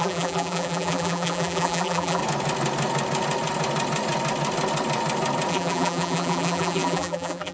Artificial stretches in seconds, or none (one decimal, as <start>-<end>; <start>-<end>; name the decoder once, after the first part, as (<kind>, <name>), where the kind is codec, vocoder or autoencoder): 0.0-2.2 (vocoder, BigVGAN v2); 5.5-7.5

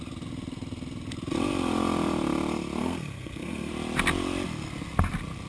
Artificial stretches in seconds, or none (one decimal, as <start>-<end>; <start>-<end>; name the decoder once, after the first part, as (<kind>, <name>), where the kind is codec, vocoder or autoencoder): 2.8-3.7 (codec, SNAC)